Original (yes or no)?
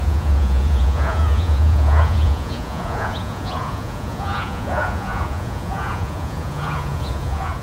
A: no